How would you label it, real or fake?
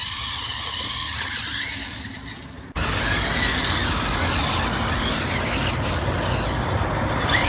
real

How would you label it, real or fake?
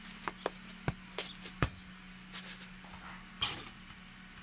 real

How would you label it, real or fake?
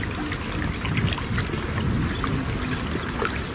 real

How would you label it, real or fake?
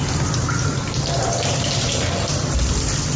fake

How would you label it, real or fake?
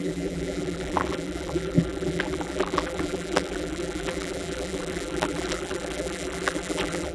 fake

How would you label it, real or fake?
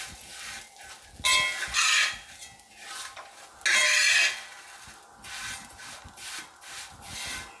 real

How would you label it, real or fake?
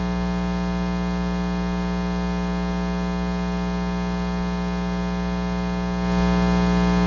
real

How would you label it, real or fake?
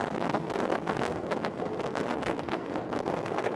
fake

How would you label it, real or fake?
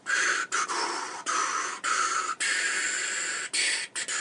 real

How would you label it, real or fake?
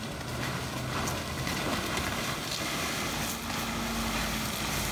real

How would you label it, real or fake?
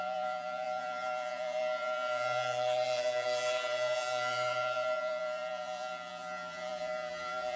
fake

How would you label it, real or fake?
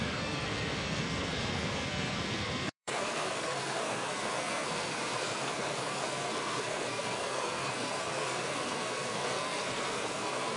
fake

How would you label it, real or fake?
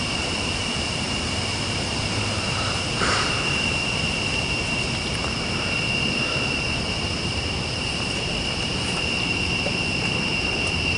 fake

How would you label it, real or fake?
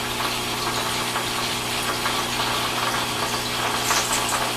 real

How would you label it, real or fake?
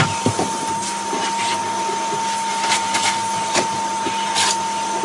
real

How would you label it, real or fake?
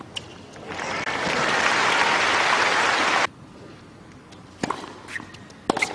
real